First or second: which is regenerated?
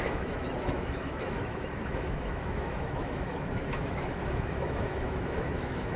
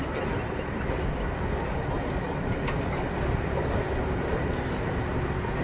first